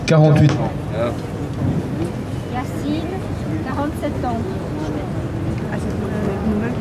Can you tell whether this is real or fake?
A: real